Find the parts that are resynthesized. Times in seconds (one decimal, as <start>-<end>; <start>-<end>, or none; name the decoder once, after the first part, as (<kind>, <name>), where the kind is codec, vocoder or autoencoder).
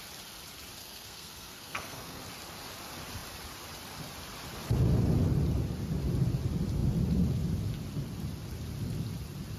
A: 0.8-2.2 (codec, SNAC)